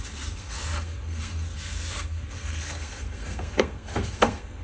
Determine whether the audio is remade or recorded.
remade